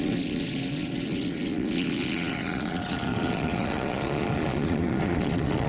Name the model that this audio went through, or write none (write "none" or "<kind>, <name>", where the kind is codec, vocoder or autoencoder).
vocoder, Vocos